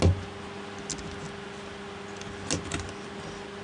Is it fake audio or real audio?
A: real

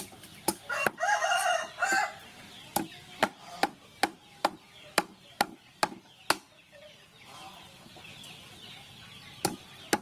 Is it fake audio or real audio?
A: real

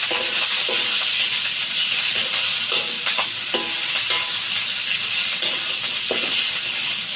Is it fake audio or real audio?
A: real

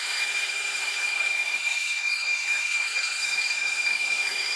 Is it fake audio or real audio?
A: fake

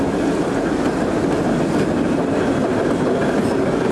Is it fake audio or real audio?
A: real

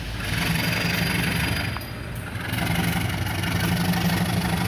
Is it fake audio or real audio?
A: real